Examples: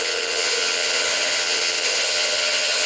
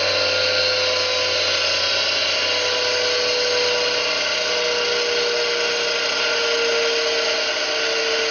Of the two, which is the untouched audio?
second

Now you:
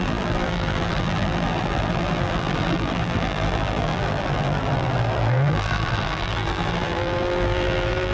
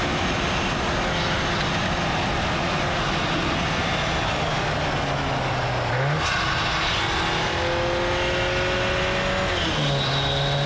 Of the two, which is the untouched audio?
second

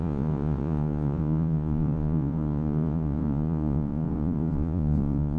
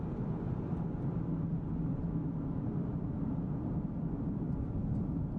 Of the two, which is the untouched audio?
second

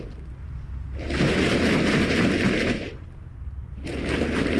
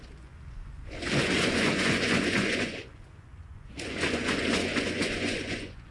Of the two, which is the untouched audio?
first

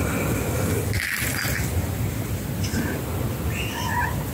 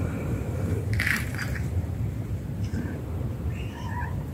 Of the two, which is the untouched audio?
first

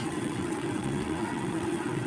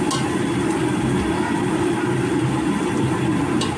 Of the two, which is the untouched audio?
second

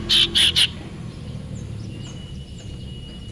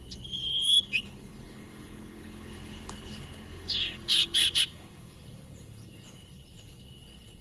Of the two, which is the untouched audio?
first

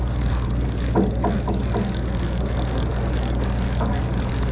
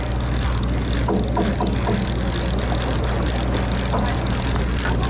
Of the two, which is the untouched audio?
second